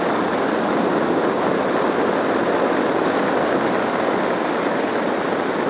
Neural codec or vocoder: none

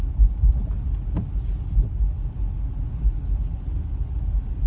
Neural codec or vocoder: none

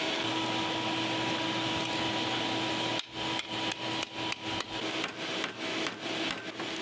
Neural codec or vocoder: none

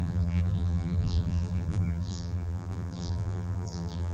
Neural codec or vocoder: vocoder, BigVGAN v2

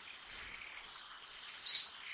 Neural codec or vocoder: none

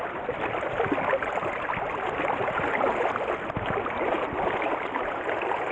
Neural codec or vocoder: none